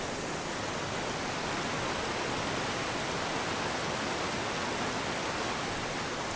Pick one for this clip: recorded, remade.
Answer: recorded